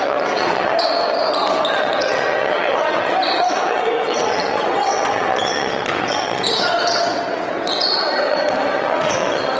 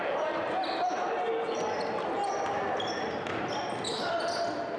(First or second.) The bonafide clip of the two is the second